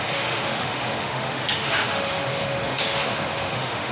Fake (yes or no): yes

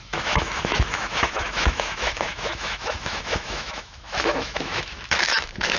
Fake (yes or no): yes